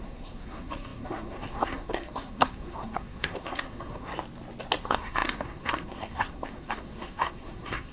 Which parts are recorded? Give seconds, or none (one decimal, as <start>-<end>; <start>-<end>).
4.1-4.8